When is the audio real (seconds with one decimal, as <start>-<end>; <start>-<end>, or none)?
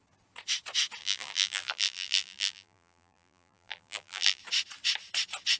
0.0-1.0; 4.4-5.6